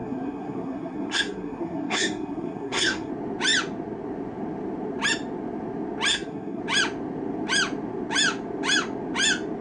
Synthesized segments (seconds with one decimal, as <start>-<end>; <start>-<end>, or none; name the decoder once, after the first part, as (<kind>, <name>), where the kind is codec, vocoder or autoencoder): 0.0-3.1 (codec, SNAC); 6.1-6.6